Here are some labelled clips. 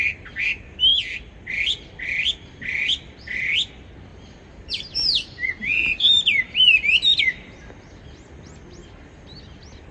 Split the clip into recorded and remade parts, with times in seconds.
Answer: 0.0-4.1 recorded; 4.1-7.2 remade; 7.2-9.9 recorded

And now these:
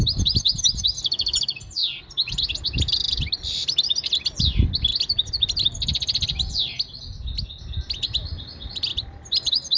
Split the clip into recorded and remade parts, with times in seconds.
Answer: 0.0-4.9 recorded; 4.9-7.0 remade; 7.0-8.9 recorded; 8.9-9.8 remade

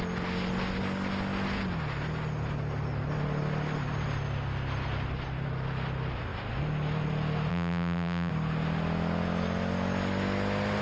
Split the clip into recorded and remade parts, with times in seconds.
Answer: 0.0-7.5 recorded; 7.5-8.3 remade; 8.3-10.8 recorded

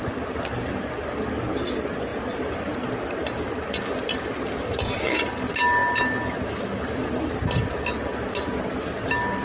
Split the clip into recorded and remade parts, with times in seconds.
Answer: 0.0-9.4 recorded